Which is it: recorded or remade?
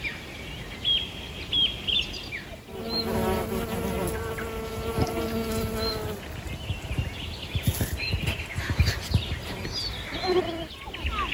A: recorded